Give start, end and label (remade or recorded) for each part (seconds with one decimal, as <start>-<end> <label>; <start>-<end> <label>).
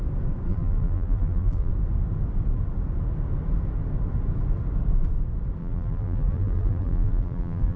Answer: 0.0-0.5 recorded; 0.5-1.7 remade; 1.7-5.6 recorded; 5.6-7.8 remade